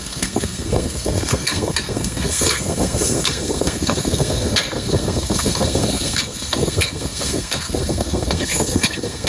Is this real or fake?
fake